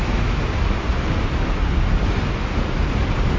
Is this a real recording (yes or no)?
yes